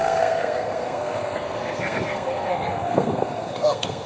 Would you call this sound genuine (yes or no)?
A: no